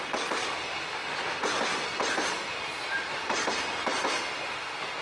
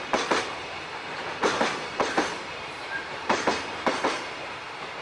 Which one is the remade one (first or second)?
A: second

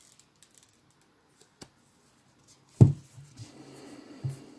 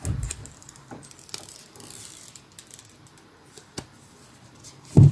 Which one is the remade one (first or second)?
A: second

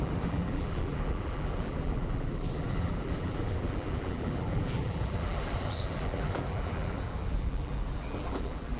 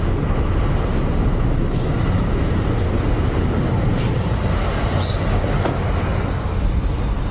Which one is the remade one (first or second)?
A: first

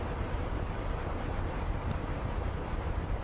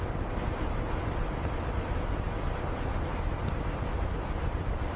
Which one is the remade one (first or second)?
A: first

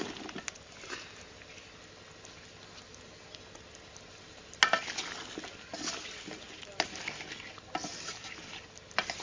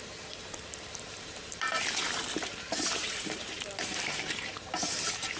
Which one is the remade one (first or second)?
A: second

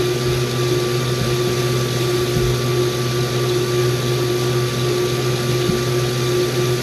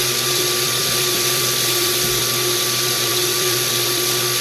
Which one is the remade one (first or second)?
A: second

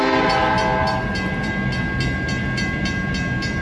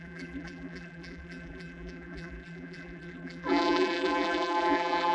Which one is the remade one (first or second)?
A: second